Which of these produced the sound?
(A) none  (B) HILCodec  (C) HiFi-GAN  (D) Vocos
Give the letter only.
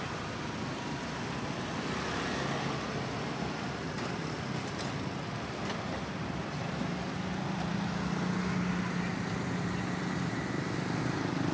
A